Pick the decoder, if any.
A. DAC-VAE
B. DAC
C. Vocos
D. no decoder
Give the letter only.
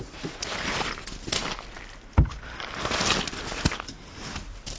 D